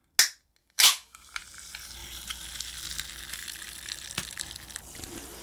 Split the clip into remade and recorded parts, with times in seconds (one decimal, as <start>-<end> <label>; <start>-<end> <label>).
0.0-0.6 recorded; 0.6-1.3 remade; 1.3-5.4 recorded